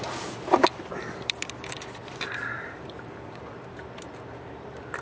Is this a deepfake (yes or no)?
yes